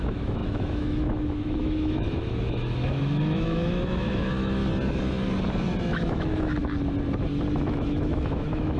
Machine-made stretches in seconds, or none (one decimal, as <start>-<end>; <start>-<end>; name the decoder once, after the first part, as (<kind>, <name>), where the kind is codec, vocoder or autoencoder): 0.0-4.6 (autoencoder, DAC-VAE); 5.8-6.6; 7.7-8.8